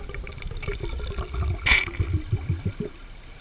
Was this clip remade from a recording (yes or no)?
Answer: no